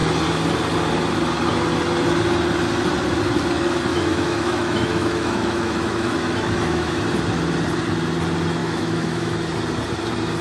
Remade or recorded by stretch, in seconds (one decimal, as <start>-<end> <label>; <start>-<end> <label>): 0.0-3.9 recorded; 3.9-7.0 remade; 7.0-8.6 recorded; 8.6-9.3 remade; 9.3-10.4 recorded